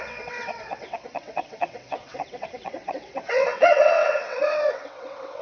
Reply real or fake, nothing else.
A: fake